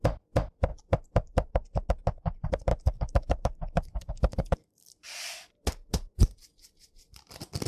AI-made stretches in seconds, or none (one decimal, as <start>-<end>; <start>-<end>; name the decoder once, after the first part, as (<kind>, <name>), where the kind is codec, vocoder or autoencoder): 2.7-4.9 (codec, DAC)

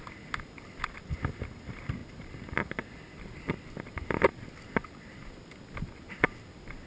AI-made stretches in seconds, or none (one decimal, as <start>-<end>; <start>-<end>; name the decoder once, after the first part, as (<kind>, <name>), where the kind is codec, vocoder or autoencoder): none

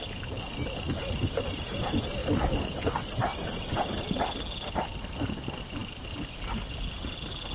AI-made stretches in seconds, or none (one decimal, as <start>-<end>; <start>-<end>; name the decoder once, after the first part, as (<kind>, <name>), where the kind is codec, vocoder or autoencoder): 2.2-4.2 (vocoder, BigVGAN v2)